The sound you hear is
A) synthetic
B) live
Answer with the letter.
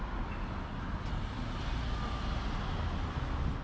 B